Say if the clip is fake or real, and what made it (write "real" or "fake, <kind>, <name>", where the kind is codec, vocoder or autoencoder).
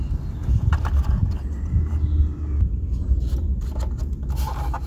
real